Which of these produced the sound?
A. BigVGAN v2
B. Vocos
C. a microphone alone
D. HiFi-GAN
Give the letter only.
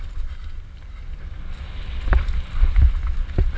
C